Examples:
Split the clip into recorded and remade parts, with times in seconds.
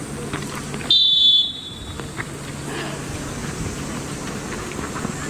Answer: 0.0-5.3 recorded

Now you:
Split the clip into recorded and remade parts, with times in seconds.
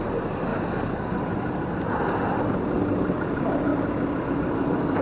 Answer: 0.0-5.0 recorded